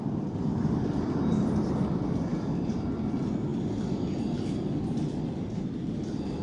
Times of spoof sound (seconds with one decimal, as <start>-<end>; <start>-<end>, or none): 0.5-1.2